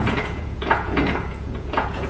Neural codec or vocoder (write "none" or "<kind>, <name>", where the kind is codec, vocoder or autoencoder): vocoder, Vocos